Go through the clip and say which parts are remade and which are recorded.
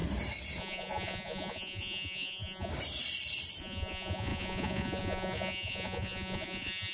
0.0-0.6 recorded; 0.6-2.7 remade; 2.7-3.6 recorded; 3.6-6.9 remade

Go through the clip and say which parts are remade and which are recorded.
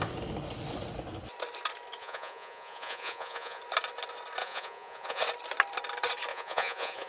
0.0-2.0 recorded; 2.0-3.6 remade; 3.6-4.4 recorded; 4.4-5.2 remade; 5.2-6.3 recorded; 6.3-7.1 remade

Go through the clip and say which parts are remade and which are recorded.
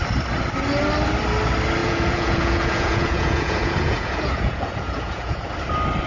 0.0-1.8 recorded; 1.8-5.5 remade; 5.5-6.1 recorded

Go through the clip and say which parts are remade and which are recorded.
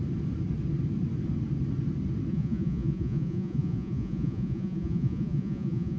0.0-2.3 recorded; 2.3-6.0 remade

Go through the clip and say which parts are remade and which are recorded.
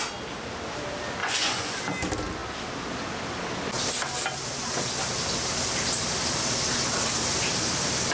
0.0-1.2 recorded; 1.2-1.8 remade; 1.8-8.1 recorded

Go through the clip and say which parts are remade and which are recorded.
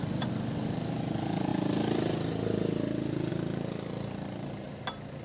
0.0-5.2 recorded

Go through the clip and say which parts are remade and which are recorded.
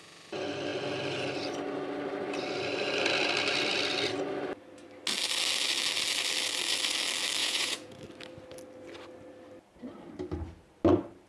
0.0-7.4 recorded; 7.4-8.0 remade; 8.0-11.3 recorded